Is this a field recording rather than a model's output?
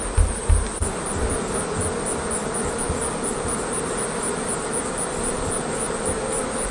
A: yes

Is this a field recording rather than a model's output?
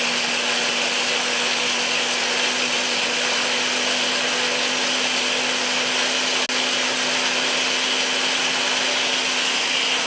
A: yes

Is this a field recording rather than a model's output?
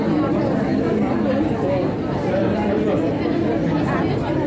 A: yes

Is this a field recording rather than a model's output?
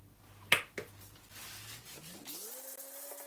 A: yes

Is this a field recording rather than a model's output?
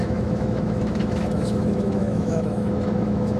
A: no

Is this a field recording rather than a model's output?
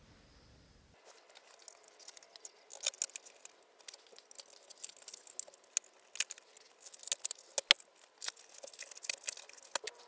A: yes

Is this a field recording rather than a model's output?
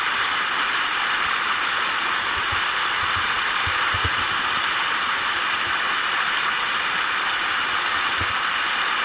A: yes